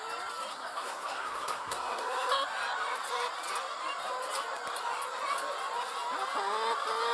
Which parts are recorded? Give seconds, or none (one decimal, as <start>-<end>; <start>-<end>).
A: 0.0-0.5; 2.3-7.1